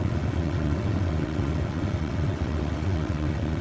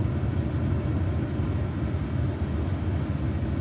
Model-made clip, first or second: first